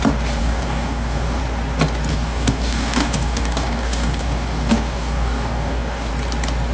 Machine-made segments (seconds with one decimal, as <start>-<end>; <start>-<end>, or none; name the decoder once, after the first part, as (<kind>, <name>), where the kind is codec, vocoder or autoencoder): 0.4-1.4 (codec, DAC); 2.1-6.1

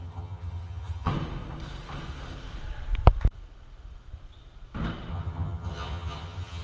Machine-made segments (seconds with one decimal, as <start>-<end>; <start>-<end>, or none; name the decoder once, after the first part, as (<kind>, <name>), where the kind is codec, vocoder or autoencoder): 0.0-1.1 (vocoder, HiFi-GAN); 5.1-6.6

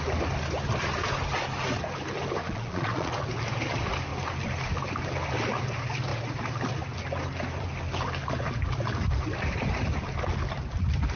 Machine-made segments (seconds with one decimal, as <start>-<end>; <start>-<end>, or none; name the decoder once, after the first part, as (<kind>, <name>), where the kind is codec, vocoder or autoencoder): 2.4-3.1 (vocoder, Vocos)

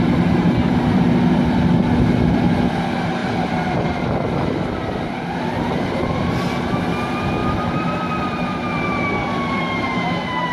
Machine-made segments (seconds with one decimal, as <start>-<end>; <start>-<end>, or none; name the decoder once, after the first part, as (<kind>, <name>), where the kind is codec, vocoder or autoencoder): 3.2-6.3 (vocoder, BigVGAN v2); 7.4-9.6